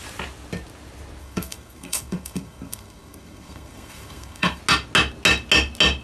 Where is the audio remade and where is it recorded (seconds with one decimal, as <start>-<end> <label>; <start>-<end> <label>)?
0.0-1.2 recorded; 1.2-4.6 remade; 4.6-6.0 recorded